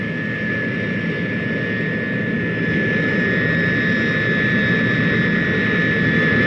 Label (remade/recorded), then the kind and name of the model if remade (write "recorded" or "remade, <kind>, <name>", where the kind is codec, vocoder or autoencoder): recorded